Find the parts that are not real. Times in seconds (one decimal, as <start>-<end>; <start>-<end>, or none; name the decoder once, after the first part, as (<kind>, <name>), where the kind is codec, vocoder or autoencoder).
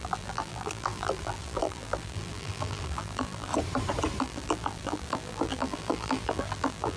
0.0-3.5 (vocoder, BigVGAN v2); 4.2-7.0